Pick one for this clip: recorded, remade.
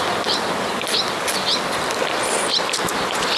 recorded